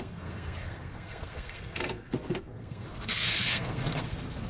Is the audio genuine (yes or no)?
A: no